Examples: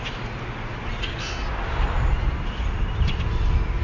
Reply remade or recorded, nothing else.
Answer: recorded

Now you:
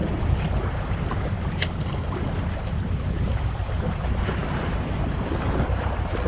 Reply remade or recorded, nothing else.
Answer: remade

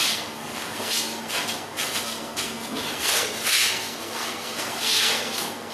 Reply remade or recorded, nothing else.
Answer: remade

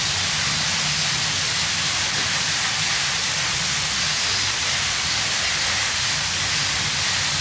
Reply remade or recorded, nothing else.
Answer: recorded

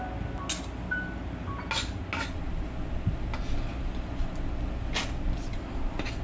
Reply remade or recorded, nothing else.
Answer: recorded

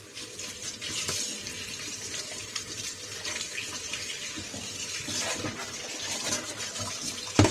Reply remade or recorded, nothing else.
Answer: recorded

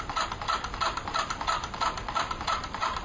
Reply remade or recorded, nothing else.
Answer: recorded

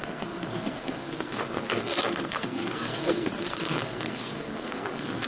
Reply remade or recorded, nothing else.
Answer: remade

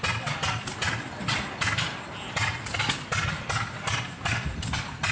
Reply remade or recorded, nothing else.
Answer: recorded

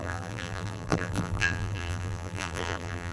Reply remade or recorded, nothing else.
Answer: remade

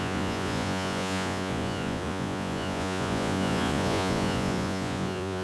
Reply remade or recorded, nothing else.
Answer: remade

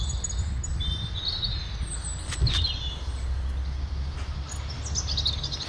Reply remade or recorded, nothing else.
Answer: recorded